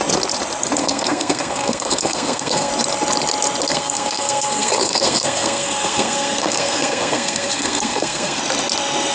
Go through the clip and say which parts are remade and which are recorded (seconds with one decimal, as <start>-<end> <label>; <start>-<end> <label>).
0.0-0.8 recorded; 0.8-2.7 remade; 2.7-3.7 recorded; 3.7-8.4 remade; 8.4-9.1 recorded

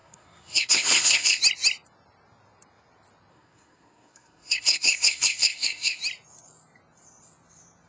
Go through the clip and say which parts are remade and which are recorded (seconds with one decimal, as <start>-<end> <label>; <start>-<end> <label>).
0.0-1.4 remade; 1.4-3.3 recorded; 3.3-6.0 remade; 6.0-7.9 recorded

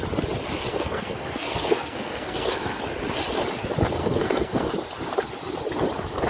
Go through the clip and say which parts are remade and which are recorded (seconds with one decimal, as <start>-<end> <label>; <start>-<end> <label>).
0.0-0.7 recorded; 0.7-2.8 remade; 2.8-4.0 recorded; 4.0-4.7 remade; 4.7-6.3 recorded